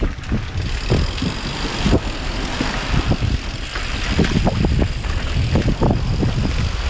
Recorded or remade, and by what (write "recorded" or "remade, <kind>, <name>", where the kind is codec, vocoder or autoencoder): recorded